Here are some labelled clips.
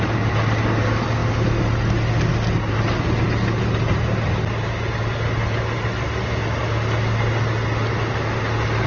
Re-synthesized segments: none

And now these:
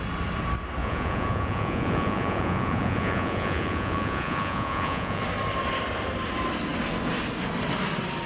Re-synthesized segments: 0.8-5.2

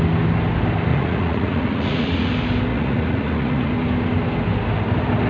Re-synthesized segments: 0.9-2.3; 2.7-3.7

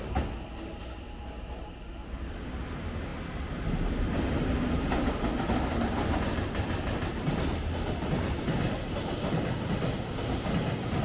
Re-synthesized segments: none

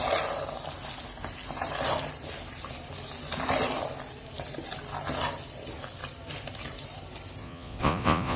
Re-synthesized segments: 7.4-8.4

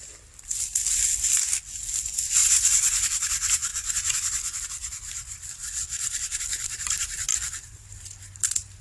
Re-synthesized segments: 2.4-3.0; 3.7-4.6